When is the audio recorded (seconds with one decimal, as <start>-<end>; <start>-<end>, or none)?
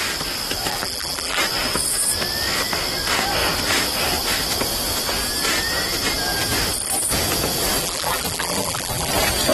0.0-0.7; 1.4-7.8; 9.1-9.5